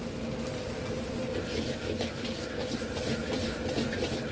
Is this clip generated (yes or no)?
no